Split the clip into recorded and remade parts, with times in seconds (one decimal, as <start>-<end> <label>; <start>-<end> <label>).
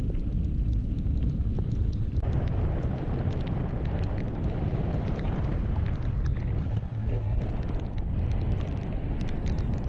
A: 0.0-6.6 recorded; 6.6-7.4 remade; 7.4-9.9 recorded